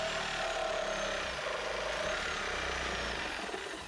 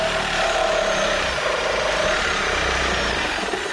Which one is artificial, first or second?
second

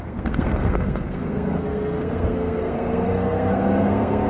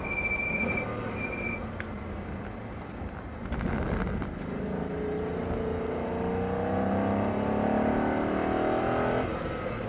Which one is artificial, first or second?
first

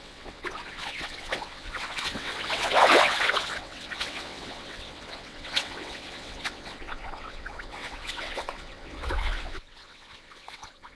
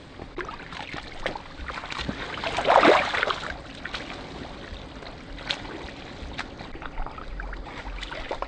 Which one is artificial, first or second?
first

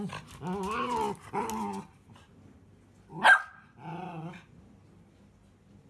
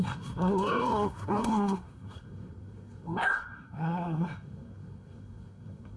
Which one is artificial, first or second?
second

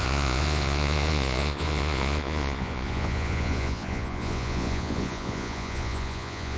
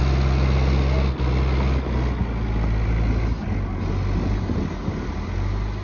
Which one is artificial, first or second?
first